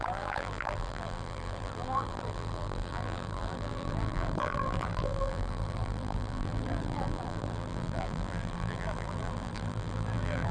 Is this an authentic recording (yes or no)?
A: no